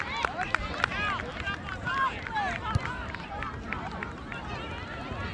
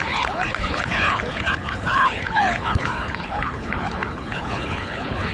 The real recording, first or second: first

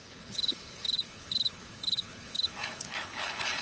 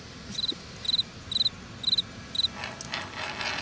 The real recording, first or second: second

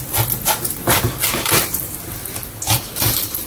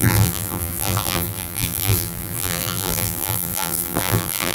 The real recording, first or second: first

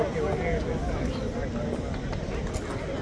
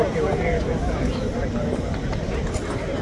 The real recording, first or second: first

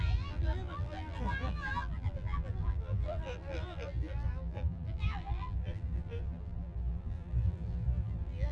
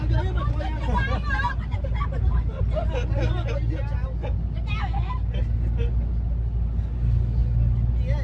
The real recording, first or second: second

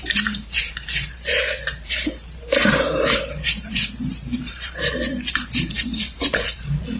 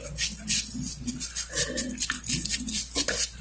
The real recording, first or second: second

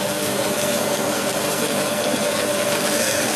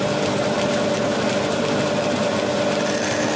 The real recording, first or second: second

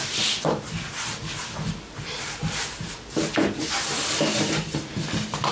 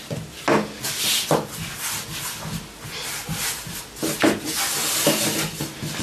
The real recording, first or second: second